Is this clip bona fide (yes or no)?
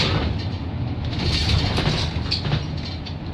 yes